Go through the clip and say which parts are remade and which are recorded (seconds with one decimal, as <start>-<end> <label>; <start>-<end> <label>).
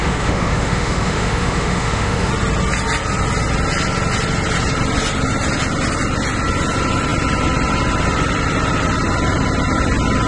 0.0-2.3 remade; 2.3-10.3 recorded